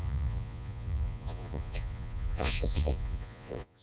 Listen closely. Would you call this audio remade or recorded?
remade